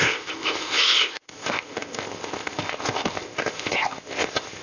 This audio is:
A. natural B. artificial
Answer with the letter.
B